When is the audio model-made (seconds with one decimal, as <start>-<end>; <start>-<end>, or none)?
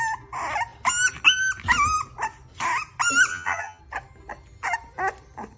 3.3-3.8